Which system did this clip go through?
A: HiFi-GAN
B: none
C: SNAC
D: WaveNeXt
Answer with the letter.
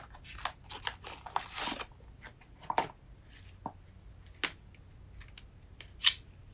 B